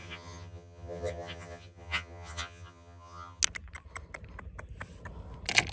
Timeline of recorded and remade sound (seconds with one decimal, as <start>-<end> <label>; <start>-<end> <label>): 0.0-3.4 remade; 3.4-5.7 recorded